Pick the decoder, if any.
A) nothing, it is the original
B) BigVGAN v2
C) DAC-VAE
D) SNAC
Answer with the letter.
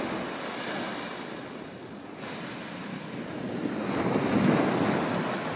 A